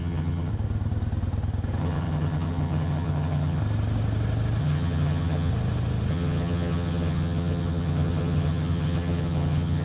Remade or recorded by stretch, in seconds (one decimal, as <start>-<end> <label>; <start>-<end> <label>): 0.0-0.5 remade; 0.5-1.8 recorded; 1.8-3.6 remade; 3.6-4.6 recorded; 4.6-5.5 remade; 5.5-6.1 recorded; 6.1-9.8 remade